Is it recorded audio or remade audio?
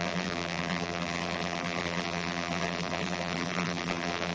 remade